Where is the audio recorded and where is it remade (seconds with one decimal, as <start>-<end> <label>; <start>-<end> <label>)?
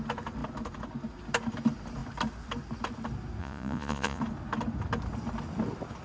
0.0-3.4 recorded; 3.4-4.2 remade; 4.2-6.0 recorded